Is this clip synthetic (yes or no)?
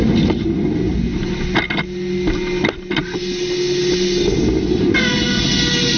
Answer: no